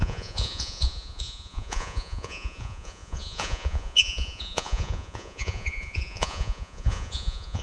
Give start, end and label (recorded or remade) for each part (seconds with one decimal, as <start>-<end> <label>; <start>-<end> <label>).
0.0-7.6 remade